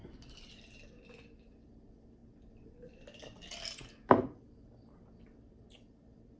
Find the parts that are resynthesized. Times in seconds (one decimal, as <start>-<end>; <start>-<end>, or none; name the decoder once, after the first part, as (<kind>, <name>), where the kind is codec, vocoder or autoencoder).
none